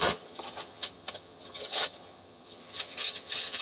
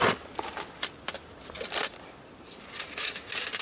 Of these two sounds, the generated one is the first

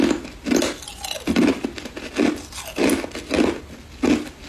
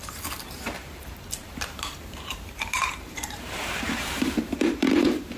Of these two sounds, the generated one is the second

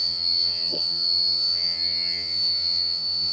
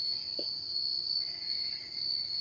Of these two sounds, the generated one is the first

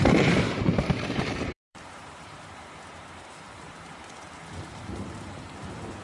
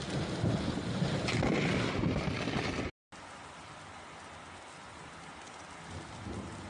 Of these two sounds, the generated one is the first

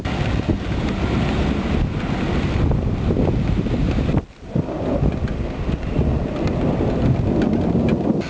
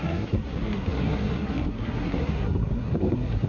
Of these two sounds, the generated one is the second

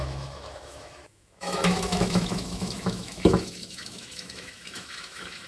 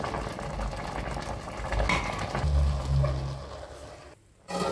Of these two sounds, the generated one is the first